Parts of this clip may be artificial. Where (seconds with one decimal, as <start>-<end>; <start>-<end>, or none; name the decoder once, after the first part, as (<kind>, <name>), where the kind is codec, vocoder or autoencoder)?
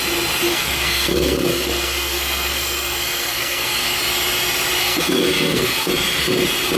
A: 0.5-4.0 (codec, SNAC); 4.8-5.9